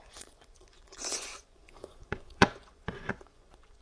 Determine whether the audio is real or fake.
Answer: fake